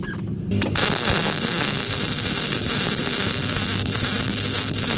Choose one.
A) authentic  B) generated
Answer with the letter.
A